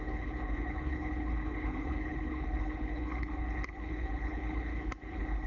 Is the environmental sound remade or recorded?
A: remade